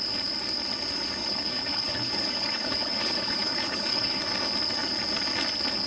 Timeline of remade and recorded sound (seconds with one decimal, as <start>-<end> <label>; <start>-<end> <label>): 0.0-1.2 recorded; 1.2-4.2 remade; 4.2-5.9 recorded